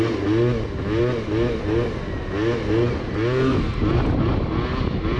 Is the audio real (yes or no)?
yes